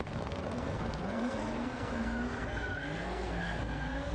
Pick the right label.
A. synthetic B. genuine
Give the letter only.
A